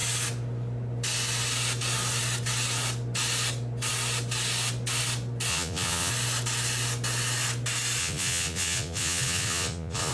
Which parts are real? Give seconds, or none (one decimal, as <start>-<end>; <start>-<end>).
0.0-5.5; 6.1-8.0